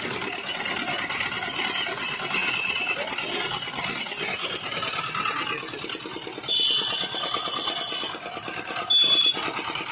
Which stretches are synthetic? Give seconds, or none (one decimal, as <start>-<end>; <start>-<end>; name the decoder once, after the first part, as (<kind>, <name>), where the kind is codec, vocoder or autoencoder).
2.4-2.9 (vocoder, Vocos)